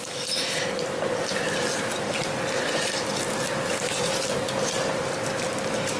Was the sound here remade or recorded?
recorded